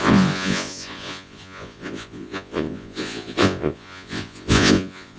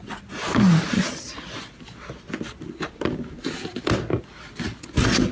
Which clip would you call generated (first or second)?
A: first